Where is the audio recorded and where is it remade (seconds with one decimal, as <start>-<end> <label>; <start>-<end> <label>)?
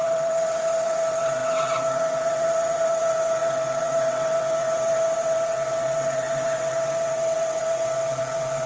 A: 0.0-8.7 remade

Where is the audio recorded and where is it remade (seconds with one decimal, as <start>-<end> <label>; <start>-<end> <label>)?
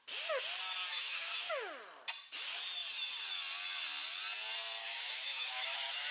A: 0.0-0.9 recorded; 0.9-1.5 remade; 1.5-4.8 recorded; 4.8-6.1 remade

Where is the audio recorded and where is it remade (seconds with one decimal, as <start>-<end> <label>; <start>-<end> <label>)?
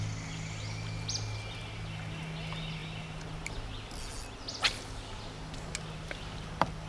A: 0.0-6.9 recorded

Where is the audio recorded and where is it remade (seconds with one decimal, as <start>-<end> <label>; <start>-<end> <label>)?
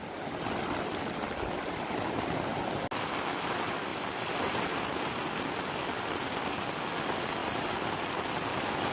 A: 0.0-8.9 recorded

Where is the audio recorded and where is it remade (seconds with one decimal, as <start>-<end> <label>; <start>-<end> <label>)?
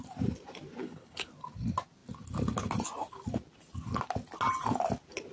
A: 0.0-0.8 recorded; 0.8-1.3 remade; 1.3-5.3 recorded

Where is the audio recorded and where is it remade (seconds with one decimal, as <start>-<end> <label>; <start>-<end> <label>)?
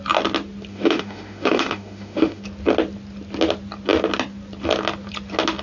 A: 0.0-0.7 recorded; 0.7-2.4 remade; 2.4-5.6 recorded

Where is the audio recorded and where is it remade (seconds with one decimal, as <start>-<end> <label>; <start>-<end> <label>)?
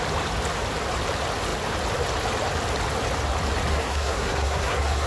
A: 0.0-3.7 recorded; 3.7-5.1 remade